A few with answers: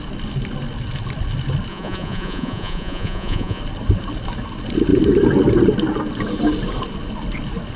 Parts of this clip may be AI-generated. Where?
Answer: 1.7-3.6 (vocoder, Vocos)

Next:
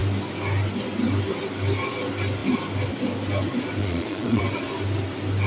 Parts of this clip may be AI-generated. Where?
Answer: 3.8-4.4 (vocoder, Vocos)

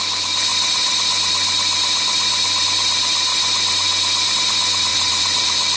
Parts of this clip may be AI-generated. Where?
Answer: 4.9-5.8 (vocoder, Vocos)

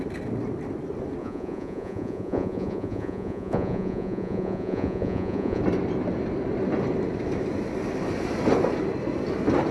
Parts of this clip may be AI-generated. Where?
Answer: 1.2-5.6 (vocoder, Vocos)